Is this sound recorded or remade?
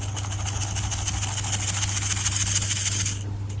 recorded